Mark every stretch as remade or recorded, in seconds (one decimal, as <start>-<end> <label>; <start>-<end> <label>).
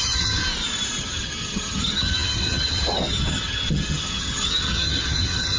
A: 0.0-0.4 remade; 0.4-1.0 recorded; 1.0-5.6 remade